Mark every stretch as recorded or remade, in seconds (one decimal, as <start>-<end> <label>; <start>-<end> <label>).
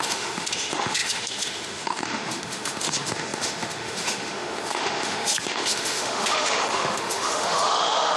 0.0-8.2 remade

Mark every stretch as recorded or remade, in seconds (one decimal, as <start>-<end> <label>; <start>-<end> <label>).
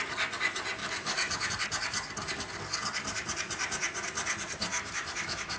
0.0-0.8 recorded; 0.8-1.5 remade; 1.5-4.7 recorded; 4.7-5.6 remade